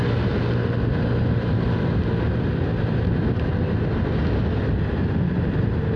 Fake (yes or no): no